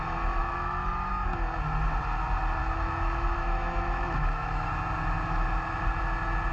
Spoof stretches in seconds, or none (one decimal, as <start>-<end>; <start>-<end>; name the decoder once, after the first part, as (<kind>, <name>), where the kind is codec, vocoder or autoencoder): 0.4-1.1 (autoencoder, DAC-VAE); 2.6-4.7